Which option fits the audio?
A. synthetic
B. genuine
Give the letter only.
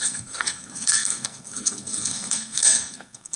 A